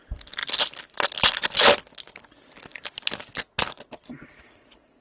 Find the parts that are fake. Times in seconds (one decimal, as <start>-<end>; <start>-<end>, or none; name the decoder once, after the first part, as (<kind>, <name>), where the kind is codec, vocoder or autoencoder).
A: none